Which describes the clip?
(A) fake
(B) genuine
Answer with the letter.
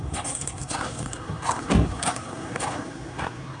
A